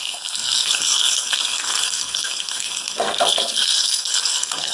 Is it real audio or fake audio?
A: fake